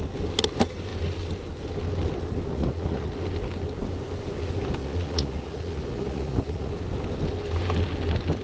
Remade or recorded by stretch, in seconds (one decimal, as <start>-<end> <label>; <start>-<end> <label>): 0.0-2.5 recorded; 2.5-3.2 remade; 3.2-4.8 recorded; 4.8-6.7 remade; 6.7-8.4 recorded